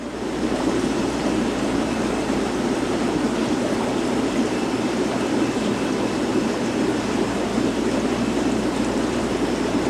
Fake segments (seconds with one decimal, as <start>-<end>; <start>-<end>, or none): 0.0-7.5; 9.2-9.9